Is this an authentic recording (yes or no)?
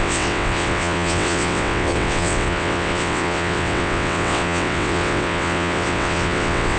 no